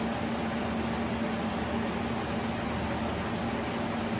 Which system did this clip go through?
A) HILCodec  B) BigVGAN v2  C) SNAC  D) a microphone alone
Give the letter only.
D